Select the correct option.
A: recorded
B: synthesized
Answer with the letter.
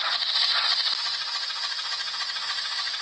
A